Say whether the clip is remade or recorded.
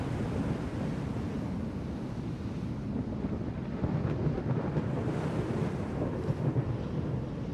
recorded